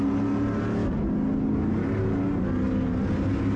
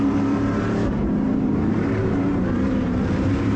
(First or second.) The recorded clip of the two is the first